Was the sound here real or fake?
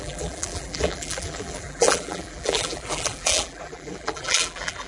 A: fake